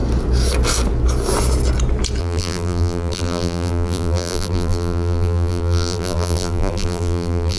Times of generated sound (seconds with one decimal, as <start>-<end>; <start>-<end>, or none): 2.2-7.6